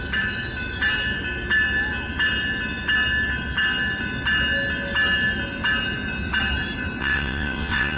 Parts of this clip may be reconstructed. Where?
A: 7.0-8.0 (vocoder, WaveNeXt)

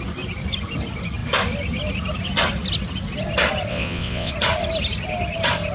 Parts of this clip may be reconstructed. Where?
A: 3.7-4.3 (vocoder, WaveNeXt)

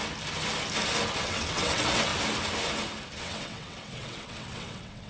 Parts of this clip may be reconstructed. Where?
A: 1.2-2.1 (vocoder, WaveNeXt); 3.2-5.1

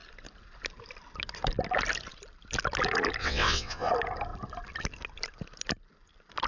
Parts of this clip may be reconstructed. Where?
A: 3.2-3.9 (vocoder, WaveNeXt)

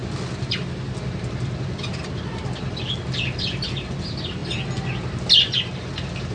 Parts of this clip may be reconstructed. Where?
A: none